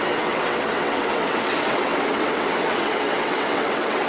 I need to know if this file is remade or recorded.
remade